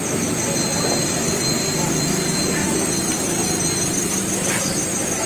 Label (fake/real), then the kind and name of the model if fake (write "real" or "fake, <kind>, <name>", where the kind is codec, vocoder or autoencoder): real